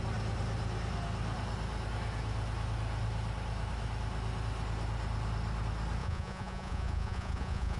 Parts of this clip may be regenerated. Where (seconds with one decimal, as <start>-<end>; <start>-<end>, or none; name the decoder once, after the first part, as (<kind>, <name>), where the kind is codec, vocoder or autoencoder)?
6.0-7.8 (vocoder, Vocos)